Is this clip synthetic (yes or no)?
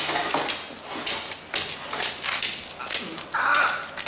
no